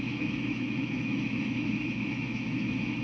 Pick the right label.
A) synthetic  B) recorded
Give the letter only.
A